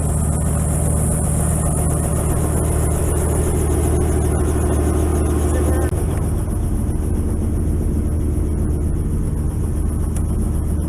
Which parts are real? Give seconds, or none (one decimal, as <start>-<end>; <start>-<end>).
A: 0.0-10.9